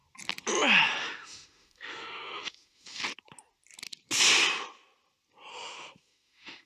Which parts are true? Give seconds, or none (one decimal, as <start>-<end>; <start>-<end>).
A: 0.0-1.0; 3.0-5.5